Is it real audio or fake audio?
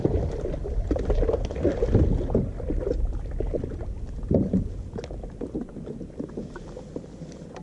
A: real